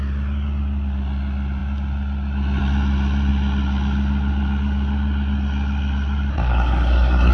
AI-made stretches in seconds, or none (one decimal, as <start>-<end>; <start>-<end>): 6.3-7.3

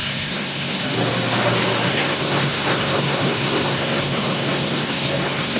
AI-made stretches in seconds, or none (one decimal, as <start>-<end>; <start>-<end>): 0.0-0.8; 1.9-5.6

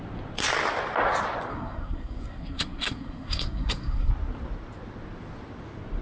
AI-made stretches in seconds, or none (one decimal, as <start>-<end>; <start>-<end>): 1.5-4.1

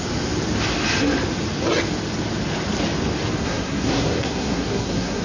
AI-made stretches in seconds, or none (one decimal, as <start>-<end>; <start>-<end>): 3.4-5.2

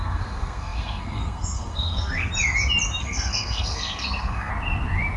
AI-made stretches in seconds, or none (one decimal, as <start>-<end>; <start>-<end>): 0.0-2.3; 3.0-4.5